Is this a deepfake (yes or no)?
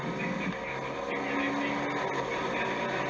no